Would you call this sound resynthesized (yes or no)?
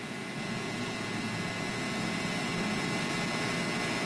no